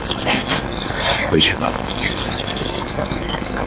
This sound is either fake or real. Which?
fake